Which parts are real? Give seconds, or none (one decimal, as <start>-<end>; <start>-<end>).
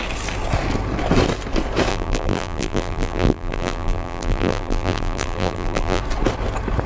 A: 0.0-1.9; 6.0-6.9